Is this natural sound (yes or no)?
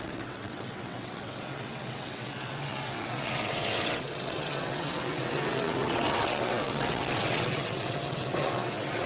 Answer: no